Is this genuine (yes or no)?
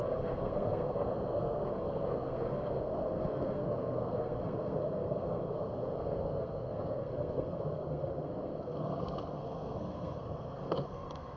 no